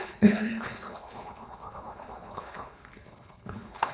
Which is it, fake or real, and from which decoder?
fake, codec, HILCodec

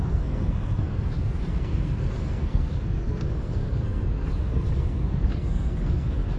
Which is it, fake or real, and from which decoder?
fake, codec, SNAC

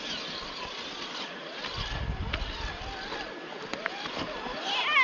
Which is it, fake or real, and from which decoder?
real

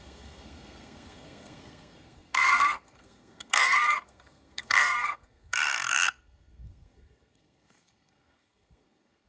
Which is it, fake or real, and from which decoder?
fake, codec, SNAC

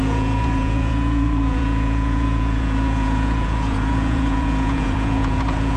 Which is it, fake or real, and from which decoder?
fake, vocoder, Vocos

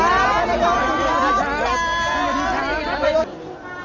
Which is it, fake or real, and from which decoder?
real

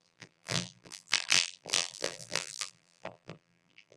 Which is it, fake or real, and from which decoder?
fake, vocoder, BigVGAN v2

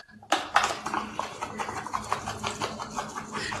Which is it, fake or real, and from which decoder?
real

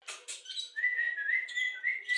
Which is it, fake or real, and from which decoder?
real